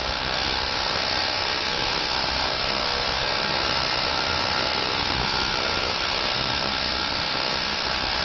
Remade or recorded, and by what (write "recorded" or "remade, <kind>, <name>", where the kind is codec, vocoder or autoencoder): remade, codec, SNAC